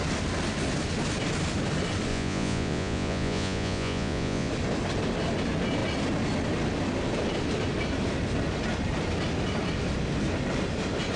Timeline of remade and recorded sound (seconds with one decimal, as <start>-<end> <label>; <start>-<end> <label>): 0.0-2.1 recorded; 2.1-4.5 remade; 4.5-11.2 recorded